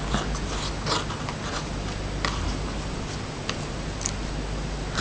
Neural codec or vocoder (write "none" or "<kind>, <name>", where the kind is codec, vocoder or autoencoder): none